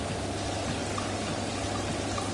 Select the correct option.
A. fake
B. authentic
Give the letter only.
B